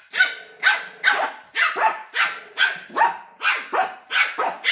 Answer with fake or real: real